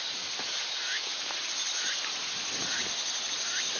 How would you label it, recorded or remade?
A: recorded